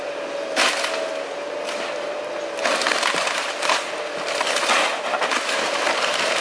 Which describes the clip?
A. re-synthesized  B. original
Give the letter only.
B